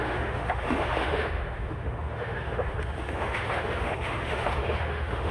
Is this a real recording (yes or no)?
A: no